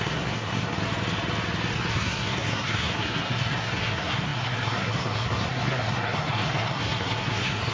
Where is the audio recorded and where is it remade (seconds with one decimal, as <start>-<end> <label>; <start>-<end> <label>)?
0.0-0.8 remade; 0.8-1.9 recorded; 1.9-7.7 remade